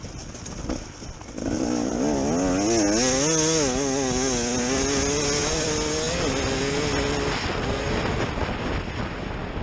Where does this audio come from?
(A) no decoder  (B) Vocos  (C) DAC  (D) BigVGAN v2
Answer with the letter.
A